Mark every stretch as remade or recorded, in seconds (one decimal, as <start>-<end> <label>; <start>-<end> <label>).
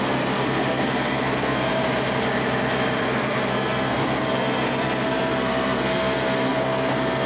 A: 0.0-1.7 remade; 1.7-3.0 recorded; 3.0-7.3 remade